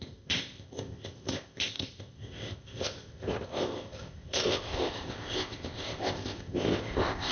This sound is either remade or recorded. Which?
remade